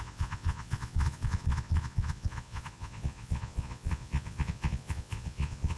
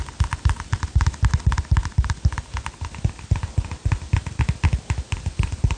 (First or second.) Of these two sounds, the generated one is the first